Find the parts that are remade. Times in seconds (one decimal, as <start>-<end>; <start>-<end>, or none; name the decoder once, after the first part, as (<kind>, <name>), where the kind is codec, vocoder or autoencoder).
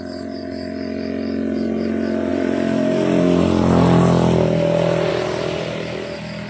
none